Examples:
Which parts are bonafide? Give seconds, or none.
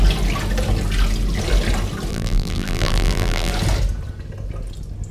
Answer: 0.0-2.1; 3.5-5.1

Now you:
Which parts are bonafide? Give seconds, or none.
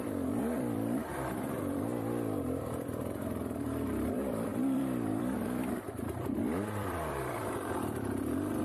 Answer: 1.9-2.6